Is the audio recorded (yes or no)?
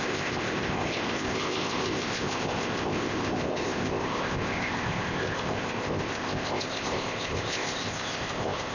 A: no